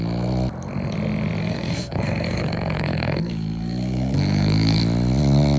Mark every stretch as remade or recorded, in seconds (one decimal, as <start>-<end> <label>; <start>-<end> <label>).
0.0-1.4 recorded; 1.4-4.8 remade; 4.8-5.6 recorded